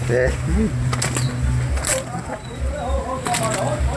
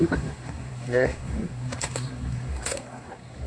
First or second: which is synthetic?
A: second